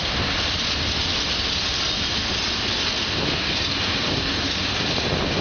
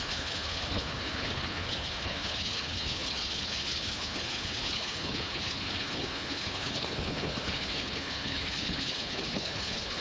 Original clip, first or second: first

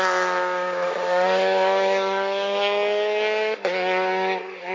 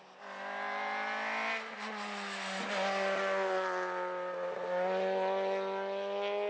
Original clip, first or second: second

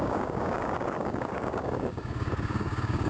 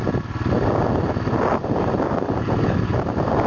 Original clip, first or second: second